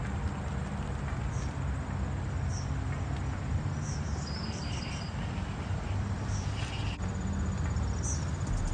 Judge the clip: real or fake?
real